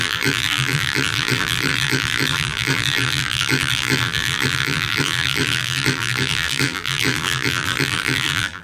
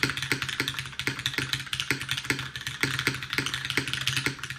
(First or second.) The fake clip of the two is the first